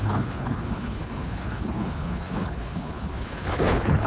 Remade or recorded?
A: remade